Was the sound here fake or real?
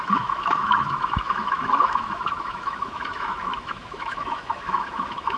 fake